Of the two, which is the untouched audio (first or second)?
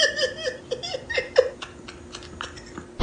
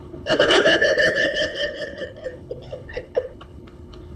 first